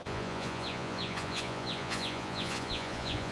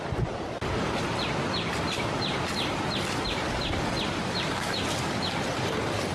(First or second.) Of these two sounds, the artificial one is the first